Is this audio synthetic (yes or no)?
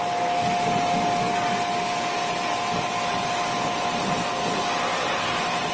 no